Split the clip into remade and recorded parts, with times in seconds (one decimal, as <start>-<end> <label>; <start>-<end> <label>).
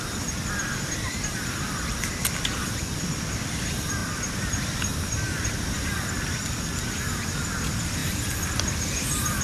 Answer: 0.0-9.4 remade